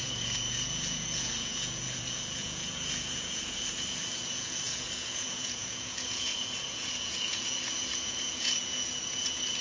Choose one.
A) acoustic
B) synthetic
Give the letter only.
B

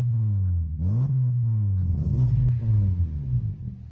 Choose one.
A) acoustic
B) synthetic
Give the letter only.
A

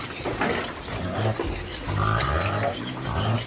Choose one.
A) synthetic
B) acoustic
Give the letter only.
B